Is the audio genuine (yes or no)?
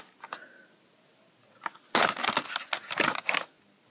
yes